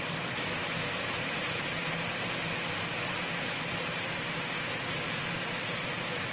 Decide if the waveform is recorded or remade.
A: recorded